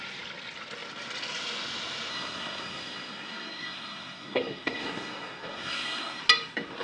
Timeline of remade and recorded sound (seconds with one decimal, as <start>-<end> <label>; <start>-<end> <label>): 0.0-2.1 recorded; 2.1-6.2 remade; 6.2-6.8 recorded